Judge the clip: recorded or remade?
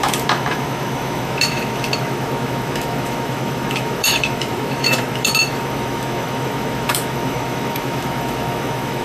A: remade